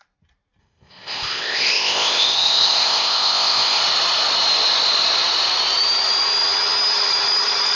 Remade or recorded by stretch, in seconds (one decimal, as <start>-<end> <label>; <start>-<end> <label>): 0.0-0.6 recorded; 0.6-3.8 remade; 3.8-7.8 recorded